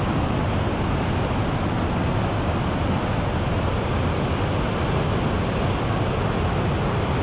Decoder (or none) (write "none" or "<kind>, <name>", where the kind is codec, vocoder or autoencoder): none